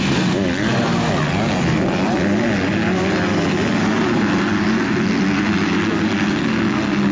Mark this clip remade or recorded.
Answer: recorded